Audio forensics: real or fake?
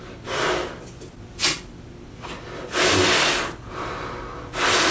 real